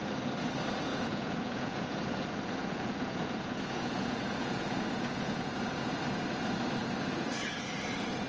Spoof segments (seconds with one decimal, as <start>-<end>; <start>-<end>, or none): 0.9-1.9; 2.6-5.9; 6.8-7.3